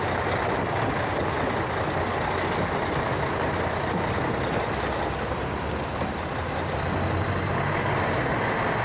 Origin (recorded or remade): recorded